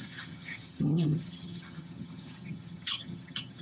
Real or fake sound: fake